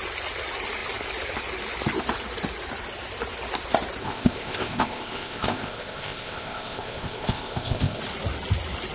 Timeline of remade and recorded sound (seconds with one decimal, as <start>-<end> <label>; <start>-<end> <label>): 0.0-4.0 recorded; 4.0-8.0 remade; 8.0-8.9 recorded